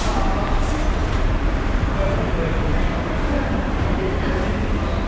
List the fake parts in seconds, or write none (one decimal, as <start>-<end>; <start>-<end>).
none